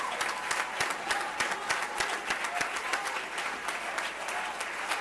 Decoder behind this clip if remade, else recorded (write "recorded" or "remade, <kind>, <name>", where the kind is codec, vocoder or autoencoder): recorded